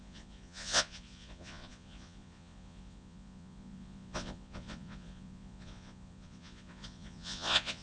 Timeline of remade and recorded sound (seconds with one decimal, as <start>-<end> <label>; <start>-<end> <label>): 0.0-7.8 remade